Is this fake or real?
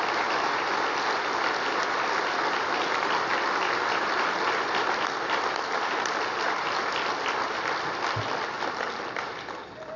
real